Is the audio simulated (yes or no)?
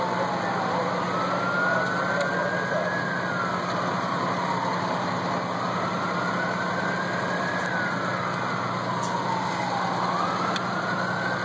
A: no